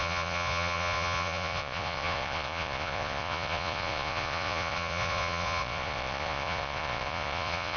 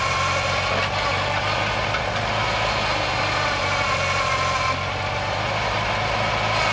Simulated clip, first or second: first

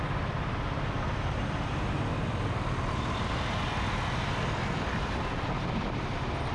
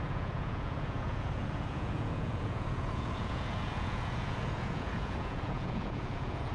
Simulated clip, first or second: second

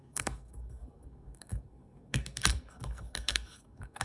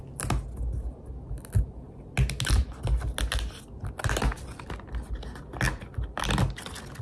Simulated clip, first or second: first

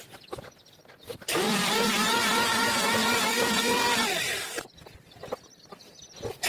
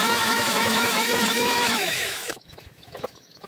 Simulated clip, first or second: second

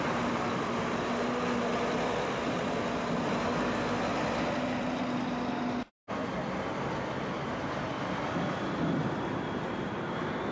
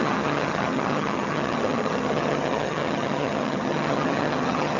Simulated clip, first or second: second